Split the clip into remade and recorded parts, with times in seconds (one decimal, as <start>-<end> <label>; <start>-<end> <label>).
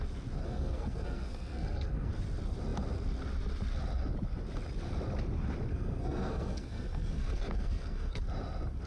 0.0-0.4 recorded; 0.4-2.1 remade; 2.1-5.7 recorded; 5.7-8.2 remade; 8.2-8.9 recorded